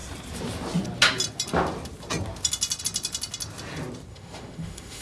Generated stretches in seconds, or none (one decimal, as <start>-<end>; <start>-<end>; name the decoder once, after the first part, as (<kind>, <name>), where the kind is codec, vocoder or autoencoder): 4.1-5.0 (autoencoder, DAC-VAE)